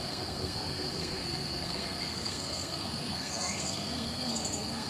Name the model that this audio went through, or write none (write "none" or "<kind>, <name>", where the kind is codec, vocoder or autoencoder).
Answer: codec, SNAC